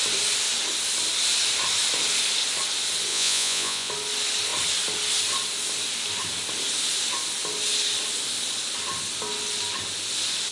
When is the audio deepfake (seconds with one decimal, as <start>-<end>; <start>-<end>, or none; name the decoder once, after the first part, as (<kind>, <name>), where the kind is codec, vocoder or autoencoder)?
3.1-3.9 (vocoder, Vocos)